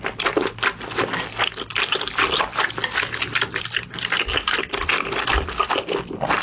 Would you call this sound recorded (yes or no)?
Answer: yes